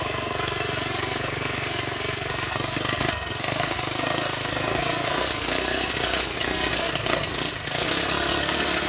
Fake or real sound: fake